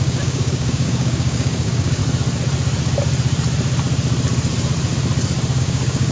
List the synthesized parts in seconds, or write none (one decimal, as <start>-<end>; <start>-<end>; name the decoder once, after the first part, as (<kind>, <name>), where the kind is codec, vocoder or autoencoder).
0.0-2.0 (codec, DAC); 5.6-6.1